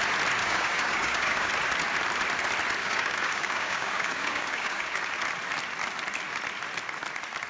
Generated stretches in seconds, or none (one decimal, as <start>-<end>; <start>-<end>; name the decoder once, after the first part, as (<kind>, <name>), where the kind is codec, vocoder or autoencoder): 0.4-1.5 (codec, DAC); 2.8-5.0